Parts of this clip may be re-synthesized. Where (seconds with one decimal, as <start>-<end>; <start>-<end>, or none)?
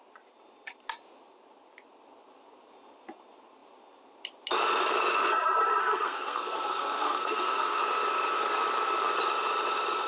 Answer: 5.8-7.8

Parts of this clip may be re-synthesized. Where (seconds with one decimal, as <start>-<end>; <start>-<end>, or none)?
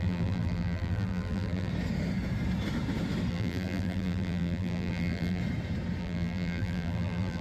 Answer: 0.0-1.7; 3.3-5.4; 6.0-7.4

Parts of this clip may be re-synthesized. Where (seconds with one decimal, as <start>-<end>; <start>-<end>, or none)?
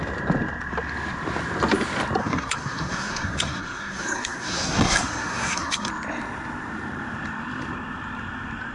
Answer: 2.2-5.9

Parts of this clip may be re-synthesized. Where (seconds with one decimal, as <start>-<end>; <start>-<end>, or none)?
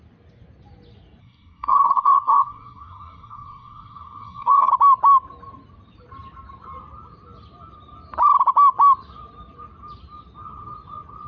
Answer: 1.2-4.7